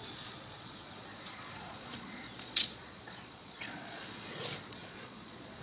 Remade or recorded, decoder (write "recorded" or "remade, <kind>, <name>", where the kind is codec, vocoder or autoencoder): remade, vocoder, Vocos